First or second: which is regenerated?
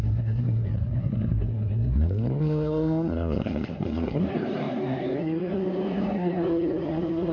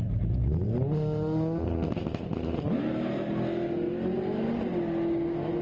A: first